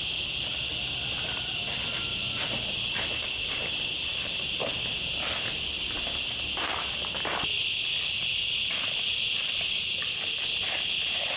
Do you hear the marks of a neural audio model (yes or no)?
no